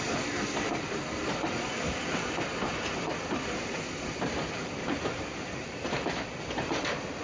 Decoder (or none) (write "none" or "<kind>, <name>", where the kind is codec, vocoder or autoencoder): vocoder, BigVGAN v2